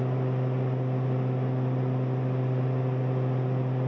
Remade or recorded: recorded